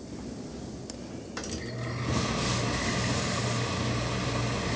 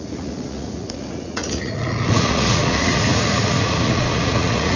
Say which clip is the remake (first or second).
second